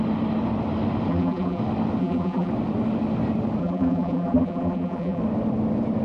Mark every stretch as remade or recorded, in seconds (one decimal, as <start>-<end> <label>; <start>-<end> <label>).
0.0-1.1 recorded; 1.1-1.6 remade; 1.6-2.0 recorded; 2.0-2.5 remade; 2.5-3.6 recorded; 3.6-5.2 remade; 5.2-6.0 recorded